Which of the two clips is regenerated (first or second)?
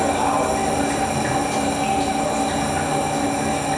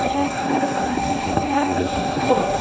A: second